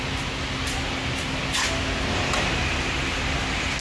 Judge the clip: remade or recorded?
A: recorded